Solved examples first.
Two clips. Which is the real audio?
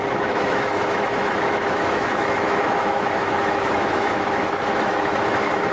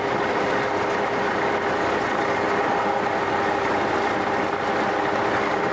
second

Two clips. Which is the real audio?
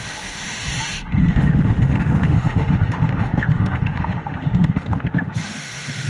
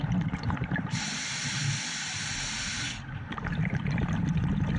second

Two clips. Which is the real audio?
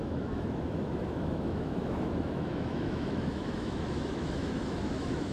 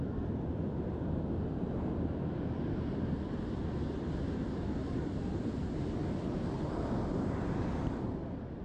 second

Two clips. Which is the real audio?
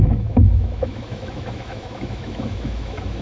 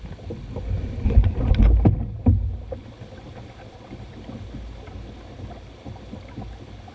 second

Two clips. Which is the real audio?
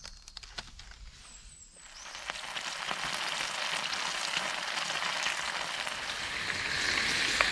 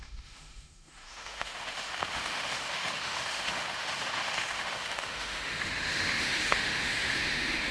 first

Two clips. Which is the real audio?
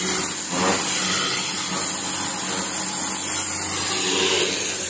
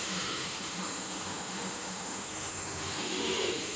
first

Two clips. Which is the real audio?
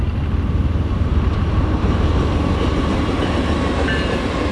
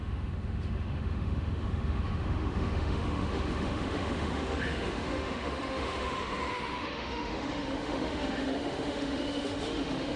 first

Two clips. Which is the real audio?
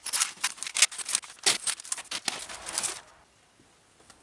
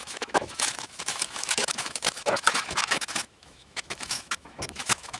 first